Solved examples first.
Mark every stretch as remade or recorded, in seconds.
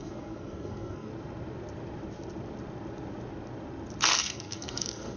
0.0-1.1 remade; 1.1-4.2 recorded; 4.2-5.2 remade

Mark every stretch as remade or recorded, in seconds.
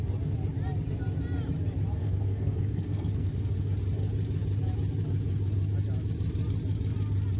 0.0-2.0 recorded; 2.0-3.3 remade; 3.3-7.4 recorded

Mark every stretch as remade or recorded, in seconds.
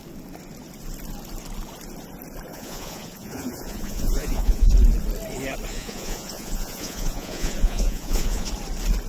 0.0-2.5 recorded; 2.5-4.7 remade; 4.7-5.7 recorded; 5.7-8.5 remade; 8.5-9.1 recorded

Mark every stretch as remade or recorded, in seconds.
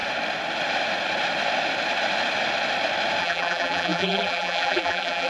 0.0-3.2 recorded; 3.2-5.3 remade